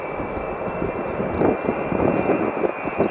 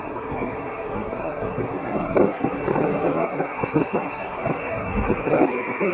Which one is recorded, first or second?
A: first